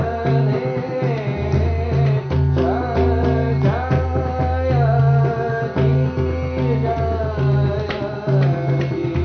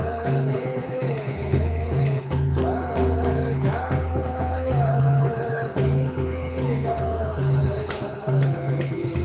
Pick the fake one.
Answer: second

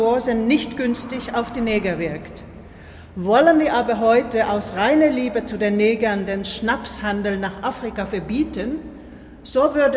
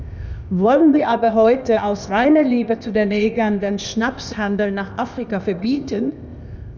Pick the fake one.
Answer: second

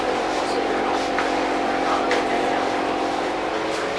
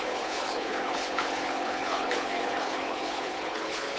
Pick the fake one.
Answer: second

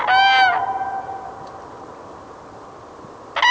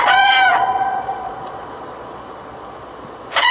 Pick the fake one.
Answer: second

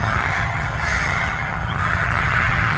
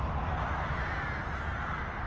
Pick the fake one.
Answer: first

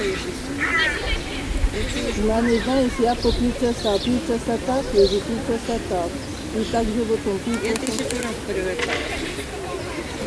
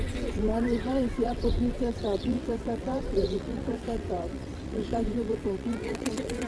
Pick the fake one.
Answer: second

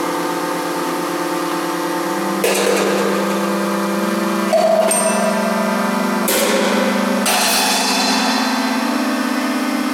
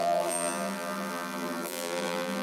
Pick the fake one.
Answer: second